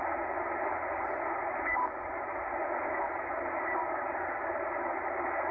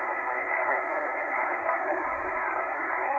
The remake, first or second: second